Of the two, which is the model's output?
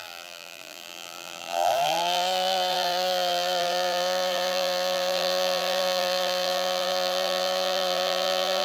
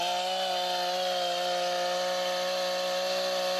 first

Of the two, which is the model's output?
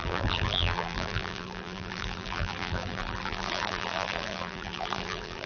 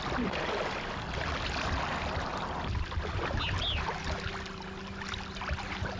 first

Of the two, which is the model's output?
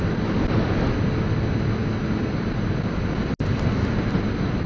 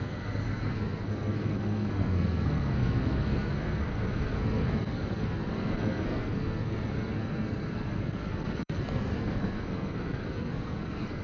second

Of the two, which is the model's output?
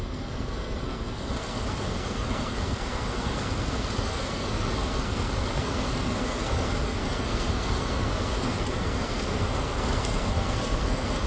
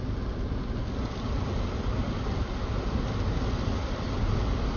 first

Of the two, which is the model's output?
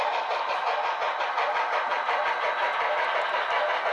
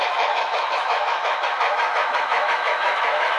second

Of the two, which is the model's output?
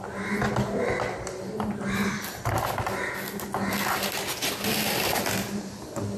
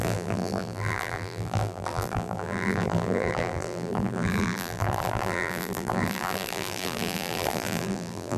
second